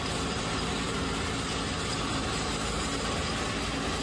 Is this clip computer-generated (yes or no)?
no